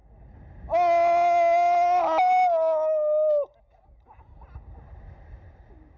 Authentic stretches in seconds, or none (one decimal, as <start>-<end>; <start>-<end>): 0.0-6.0